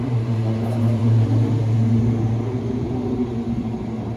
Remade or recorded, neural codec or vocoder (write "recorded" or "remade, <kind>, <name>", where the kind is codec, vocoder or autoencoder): recorded